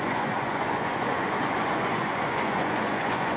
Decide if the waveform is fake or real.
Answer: fake